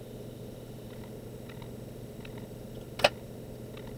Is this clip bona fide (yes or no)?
yes